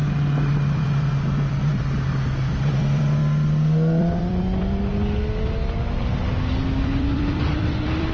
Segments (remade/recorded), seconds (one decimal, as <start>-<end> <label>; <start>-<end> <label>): 0.0-0.5 recorded; 0.5-1.6 remade; 1.6-2.8 recorded; 2.8-3.2 remade; 3.2-4.0 recorded; 4.0-4.9 remade; 4.9-6.6 recorded; 6.6-8.1 remade